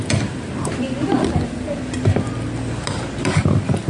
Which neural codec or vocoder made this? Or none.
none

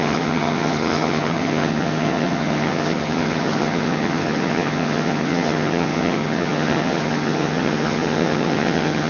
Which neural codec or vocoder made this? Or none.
vocoder, HiFi-GAN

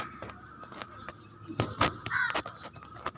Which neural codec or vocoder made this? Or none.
none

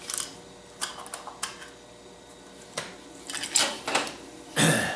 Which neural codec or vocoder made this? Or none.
none